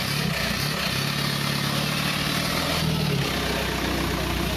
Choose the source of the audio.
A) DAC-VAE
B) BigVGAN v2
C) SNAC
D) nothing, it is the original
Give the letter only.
D